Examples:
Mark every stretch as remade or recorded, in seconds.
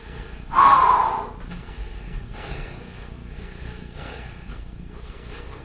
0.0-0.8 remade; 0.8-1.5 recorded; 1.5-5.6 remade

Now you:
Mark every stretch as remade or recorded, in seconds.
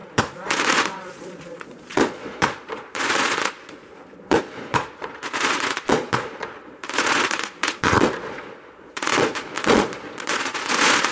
0.0-11.1 remade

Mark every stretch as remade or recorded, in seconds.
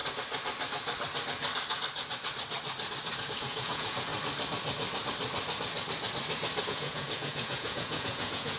0.0-3.2 recorded; 3.2-4.1 remade; 4.1-6.6 recorded; 6.6-8.6 remade